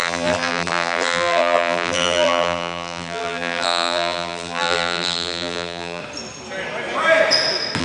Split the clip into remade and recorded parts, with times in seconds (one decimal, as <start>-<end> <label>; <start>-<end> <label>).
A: 0.0-6.0 remade; 6.0-7.8 recorded